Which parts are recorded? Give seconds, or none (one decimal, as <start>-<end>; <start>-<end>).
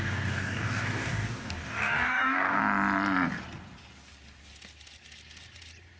2.6-6.0